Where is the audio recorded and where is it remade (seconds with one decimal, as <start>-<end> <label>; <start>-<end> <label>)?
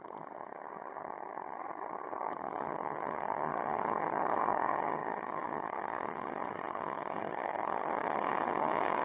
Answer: 0.0-9.0 remade